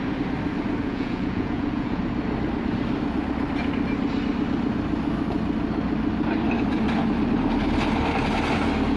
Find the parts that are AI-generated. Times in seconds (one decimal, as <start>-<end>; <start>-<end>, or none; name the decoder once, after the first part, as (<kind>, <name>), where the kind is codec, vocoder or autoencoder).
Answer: 0.8-2.0 (vocoder, Vocos)